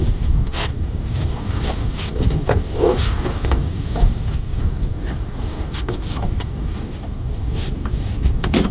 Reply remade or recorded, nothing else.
remade